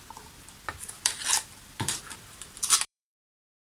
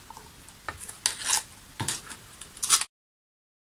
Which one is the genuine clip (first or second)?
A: second